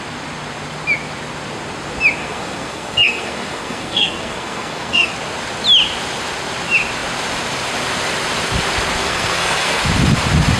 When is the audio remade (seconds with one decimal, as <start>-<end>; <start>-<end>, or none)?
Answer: 2.2-5.1; 9.0-9.8